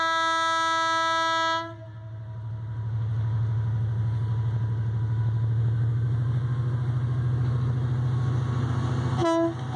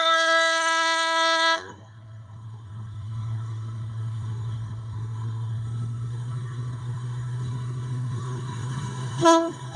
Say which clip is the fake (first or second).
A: second